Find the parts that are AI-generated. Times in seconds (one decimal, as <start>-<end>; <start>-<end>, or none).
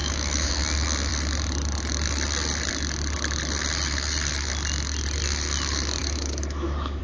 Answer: 0.0-0.5; 6.0-7.0